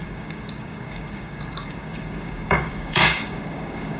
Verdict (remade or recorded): remade